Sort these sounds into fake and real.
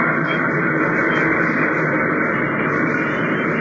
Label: fake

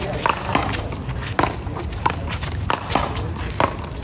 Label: real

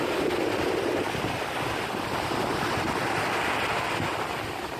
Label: real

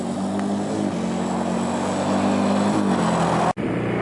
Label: real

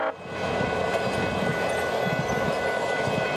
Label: real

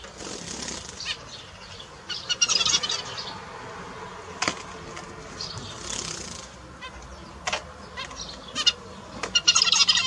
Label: real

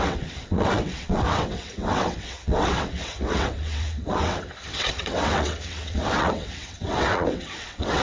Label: fake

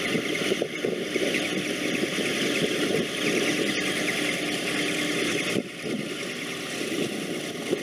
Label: real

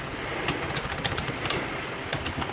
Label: real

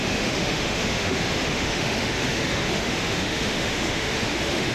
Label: fake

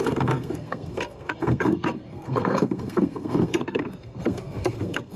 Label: fake